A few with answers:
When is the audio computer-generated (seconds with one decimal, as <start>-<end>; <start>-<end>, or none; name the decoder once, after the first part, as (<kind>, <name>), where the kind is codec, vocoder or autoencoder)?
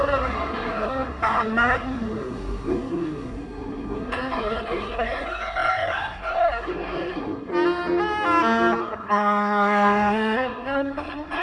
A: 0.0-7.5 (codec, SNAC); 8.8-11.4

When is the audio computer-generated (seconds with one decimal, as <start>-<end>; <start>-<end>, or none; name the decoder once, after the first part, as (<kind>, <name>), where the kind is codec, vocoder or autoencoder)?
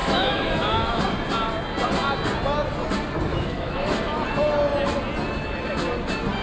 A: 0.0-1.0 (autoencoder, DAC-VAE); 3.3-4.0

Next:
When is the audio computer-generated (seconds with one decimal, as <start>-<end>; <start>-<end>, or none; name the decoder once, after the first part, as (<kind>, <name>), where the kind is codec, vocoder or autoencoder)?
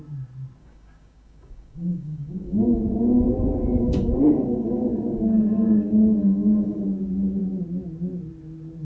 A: 0.6-2.8 (codec, DAC); 3.8-6.8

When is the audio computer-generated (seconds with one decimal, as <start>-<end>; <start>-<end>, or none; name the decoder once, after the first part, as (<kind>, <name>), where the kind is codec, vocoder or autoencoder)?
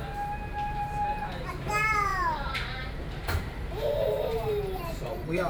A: 0.0-5.5 (vocoder, BigVGAN v2)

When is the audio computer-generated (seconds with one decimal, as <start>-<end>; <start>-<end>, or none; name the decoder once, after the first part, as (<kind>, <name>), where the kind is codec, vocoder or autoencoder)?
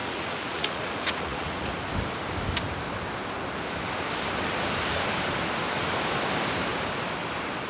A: 0.0-1.7 (vocoder, Vocos)